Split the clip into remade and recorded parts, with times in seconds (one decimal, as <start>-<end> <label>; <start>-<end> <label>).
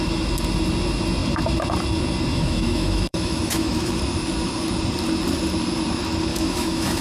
0.0-2.3 recorded; 2.3-4.0 remade; 4.0-6.3 recorded; 6.3-7.0 remade